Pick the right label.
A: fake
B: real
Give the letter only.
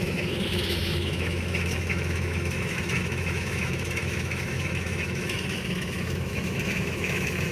A